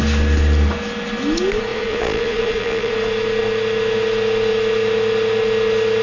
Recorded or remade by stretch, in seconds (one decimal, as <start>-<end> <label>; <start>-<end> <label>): 0.0-1.7 recorded; 1.7-2.9 remade; 2.9-6.0 recorded